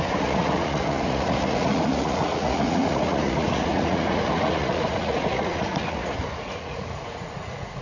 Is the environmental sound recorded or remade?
remade